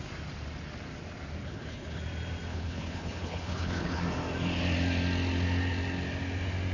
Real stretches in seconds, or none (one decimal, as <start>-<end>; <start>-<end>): 0.0-1.4; 2.0-2.5; 4.0-6.7